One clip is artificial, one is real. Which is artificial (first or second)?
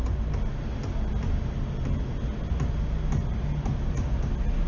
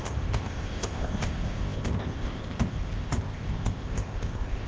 second